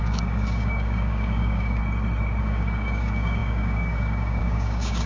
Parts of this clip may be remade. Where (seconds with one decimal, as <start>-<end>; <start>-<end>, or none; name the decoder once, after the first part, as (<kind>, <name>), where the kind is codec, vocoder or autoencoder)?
0.0-1.8 (codec, DAC); 2.4-5.1